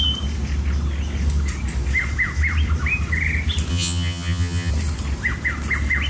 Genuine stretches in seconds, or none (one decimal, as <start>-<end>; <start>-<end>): 0.0-3.7; 4.7-6.1